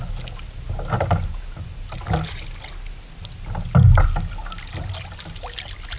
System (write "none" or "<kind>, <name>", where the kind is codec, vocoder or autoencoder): none